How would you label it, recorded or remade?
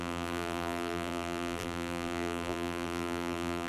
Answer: remade